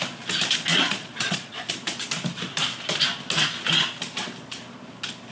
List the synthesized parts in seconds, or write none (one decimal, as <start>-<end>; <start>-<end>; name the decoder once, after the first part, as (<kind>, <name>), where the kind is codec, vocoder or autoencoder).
0.7-1.7 (vocoder, Vocos)